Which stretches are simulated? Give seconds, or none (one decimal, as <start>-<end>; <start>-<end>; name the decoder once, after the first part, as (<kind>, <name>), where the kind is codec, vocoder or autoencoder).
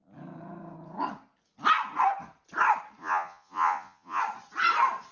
3.0-4.2 (vocoder, Vocos)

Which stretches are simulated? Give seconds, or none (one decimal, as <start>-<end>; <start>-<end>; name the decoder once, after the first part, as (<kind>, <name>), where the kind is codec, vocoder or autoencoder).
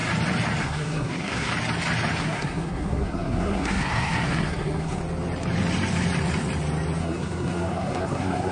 0.6-1.5 (codec, SNAC); 2.2-5.0; 7.0-8.5